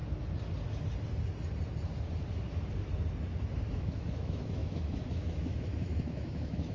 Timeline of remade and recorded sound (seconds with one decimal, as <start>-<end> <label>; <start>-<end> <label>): 0.0-3.7 recorded; 3.7-6.7 remade